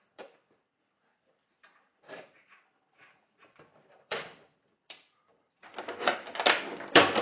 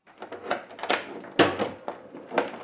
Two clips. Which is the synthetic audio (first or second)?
first